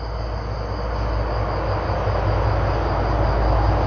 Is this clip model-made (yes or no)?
no